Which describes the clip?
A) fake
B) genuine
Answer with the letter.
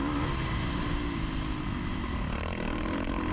B